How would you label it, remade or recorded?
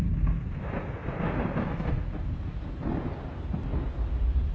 recorded